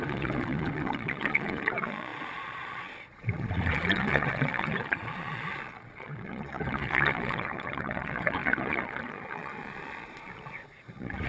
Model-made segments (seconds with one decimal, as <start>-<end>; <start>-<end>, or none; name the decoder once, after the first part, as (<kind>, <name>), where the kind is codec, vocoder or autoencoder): 0.0-11.3 (vocoder, Vocos)